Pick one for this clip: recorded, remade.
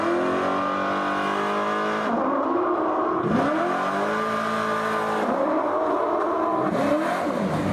recorded